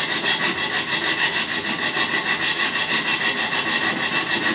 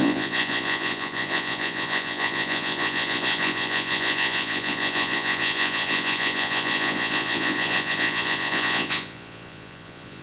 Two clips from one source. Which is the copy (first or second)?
second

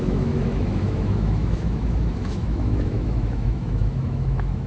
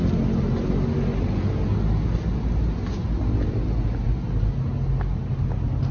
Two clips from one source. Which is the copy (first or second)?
first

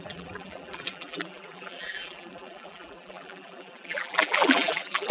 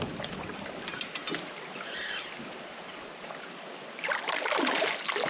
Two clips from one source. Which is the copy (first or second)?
first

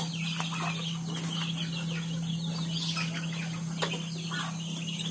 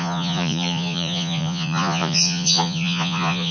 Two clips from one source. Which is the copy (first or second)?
second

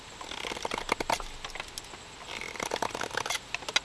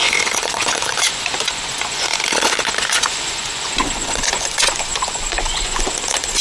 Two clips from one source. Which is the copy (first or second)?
second